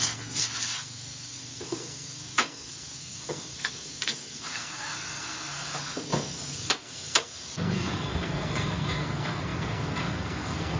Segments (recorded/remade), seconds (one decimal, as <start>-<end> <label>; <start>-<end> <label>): 0.0-10.8 remade